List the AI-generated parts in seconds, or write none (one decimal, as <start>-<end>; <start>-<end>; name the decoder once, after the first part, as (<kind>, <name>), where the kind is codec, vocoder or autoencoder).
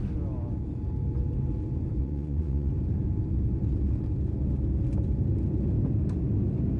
2.0-2.7 (vocoder, Vocos)